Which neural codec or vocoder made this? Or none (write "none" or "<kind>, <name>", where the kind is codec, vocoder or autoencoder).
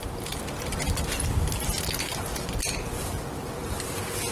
none